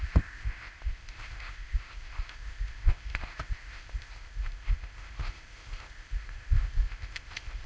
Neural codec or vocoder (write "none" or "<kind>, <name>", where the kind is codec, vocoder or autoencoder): codec, ZipCodec